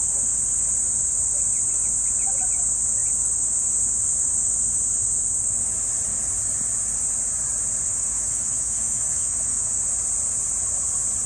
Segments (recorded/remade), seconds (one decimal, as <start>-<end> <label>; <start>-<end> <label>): 0.0-7.9 recorded; 7.9-9.9 remade; 9.9-11.3 recorded